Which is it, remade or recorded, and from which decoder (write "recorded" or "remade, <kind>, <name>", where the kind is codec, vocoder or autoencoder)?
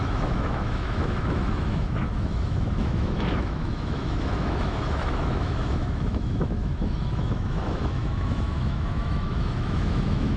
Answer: remade, autoencoder, DAC-VAE